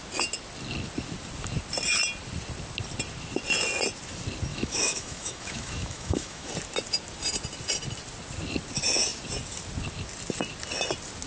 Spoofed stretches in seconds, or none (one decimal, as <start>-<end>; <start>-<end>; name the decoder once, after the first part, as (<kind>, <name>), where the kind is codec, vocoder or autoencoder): 4.5-6.5 (autoencoder, DAC-VAE)